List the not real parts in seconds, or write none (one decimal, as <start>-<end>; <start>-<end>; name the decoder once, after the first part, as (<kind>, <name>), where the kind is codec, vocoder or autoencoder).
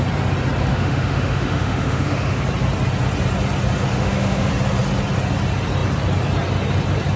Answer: 0.7-2.4 (autoencoder, DAC-VAE); 3.9-4.5